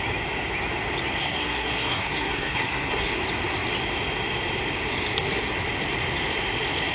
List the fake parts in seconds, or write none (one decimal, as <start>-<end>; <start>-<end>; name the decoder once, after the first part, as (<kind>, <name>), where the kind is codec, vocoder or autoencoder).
1.2-3.1 (codec, SNAC)